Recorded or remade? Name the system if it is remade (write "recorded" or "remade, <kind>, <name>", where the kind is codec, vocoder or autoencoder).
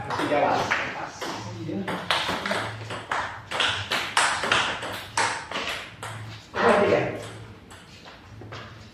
recorded